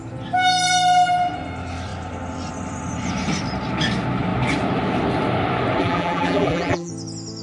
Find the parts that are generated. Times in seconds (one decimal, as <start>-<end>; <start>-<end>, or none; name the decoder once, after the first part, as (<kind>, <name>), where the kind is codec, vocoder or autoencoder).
5.8-6.9 (vocoder, BigVGAN v2)